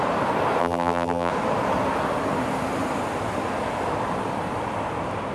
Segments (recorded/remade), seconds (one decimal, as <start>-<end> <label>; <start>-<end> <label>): 0.0-0.6 recorded; 0.6-1.3 remade; 1.3-5.3 recorded